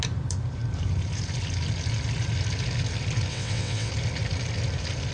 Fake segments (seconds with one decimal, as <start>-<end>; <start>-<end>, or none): 3.3-3.9